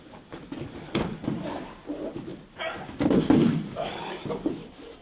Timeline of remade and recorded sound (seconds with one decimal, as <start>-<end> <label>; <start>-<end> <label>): 0.0-1.2 recorded; 1.2-1.8 remade; 1.8-3.4 recorded; 3.4-4.1 remade; 4.1-5.0 recorded